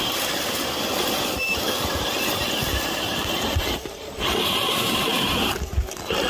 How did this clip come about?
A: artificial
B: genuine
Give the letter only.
A